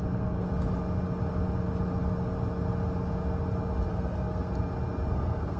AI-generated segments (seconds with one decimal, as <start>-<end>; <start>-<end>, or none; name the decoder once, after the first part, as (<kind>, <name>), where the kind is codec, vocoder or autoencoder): 0.0-0.5 (codec, SNAC); 3.9-4.5; 5.1-5.6